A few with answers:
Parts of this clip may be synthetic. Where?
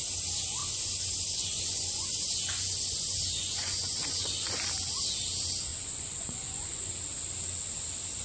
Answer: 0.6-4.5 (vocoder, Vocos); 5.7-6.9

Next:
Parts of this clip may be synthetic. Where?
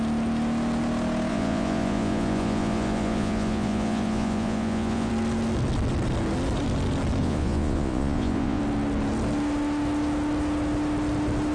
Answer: 1.3-5.1 (vocoder, Vocos); 7.2-8.6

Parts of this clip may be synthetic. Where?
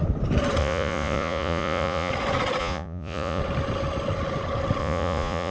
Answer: 0.6-2.1 (vocoder, Vocos); 2.6-3.4; 4.8-5.5